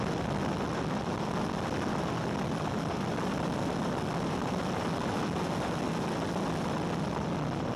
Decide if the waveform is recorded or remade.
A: recorded